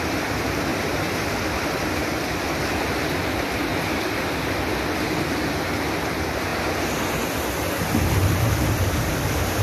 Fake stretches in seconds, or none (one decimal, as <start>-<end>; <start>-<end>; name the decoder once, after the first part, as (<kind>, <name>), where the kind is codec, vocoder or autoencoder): 0.0-3.7 (vocoder, BigVGAN v2); 6.0-6.5; 8.9-9.6